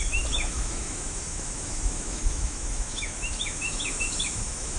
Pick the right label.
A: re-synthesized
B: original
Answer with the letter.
A